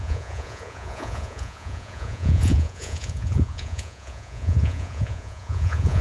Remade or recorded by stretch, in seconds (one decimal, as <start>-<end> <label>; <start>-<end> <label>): 0.0-6.0 remade